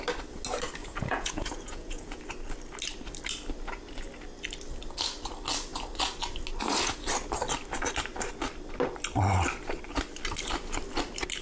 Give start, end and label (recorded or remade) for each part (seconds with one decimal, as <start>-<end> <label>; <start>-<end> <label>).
0.0-0.8 recorded; 0.8-2.2 remade; 2.2-11.4 recorded